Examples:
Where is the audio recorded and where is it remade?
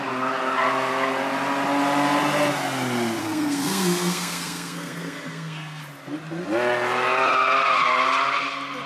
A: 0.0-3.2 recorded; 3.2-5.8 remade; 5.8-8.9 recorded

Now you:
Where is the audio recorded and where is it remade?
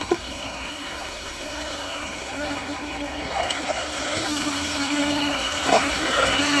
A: 0.0-6.6 remade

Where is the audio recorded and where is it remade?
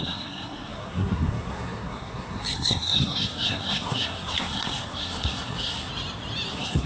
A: 0.0-5.9 remade; 5.9-6.5 recorded; 6.5-6.9 remade